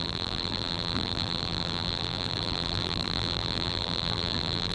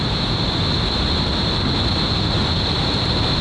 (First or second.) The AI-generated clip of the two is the first